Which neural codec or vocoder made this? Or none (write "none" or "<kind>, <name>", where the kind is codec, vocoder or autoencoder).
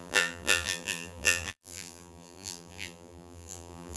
vocoder, BigVGAN v2